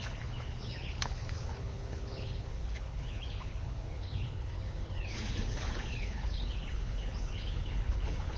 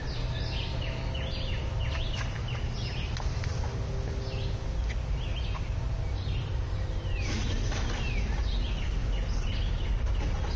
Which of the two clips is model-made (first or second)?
first